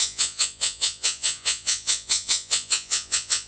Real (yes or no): no